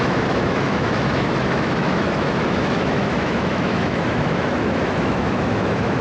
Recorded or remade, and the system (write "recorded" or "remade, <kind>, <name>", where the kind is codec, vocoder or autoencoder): remade, autoencoder, DAC-VAE